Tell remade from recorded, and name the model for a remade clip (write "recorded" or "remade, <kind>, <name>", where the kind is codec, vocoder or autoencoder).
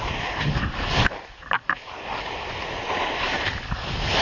recorded